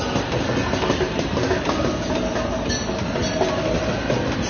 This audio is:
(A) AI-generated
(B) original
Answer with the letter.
B